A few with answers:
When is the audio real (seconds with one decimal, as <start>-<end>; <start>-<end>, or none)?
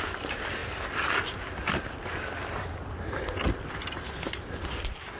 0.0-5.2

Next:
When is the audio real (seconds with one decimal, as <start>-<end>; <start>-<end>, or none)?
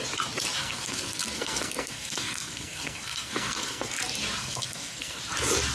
0.0-0.6; 4.0-4.4; 5.2-5.7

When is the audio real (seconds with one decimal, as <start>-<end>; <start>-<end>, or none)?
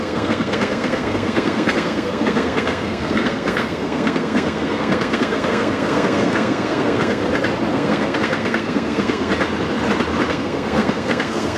7.2-7.7; 9.3-10.3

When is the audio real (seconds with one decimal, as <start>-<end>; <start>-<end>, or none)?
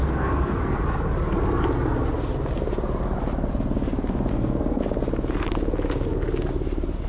0.8-4.3; 4.8-7.1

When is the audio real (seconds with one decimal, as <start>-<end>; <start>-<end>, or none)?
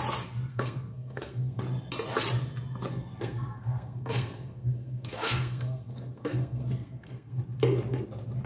0.0-0.5; 1.6-2.9; 7.4-8.5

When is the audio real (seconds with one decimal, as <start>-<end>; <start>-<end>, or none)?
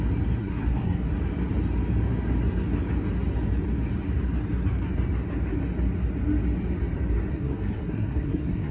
0.0-0.4; 1.1-7.3